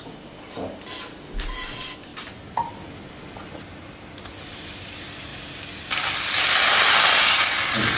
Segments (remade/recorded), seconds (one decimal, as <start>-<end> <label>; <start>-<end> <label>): 0.0-8.0 recorded